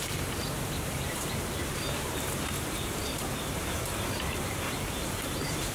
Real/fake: fake